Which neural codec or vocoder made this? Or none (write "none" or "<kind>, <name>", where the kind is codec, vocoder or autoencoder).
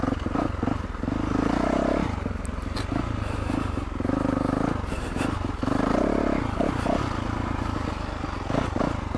none